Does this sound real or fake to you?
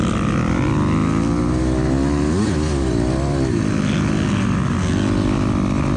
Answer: real